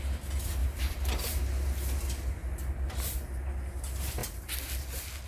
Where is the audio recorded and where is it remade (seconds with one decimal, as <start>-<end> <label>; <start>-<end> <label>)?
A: 0.0-0.6 recorded; 0.6-1.4 remade; 1.4-5.3 recorded